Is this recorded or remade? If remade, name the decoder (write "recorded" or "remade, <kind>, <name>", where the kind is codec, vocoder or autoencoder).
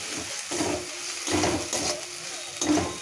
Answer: recorded